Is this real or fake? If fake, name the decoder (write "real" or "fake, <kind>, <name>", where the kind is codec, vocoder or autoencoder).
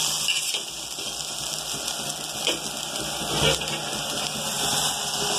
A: real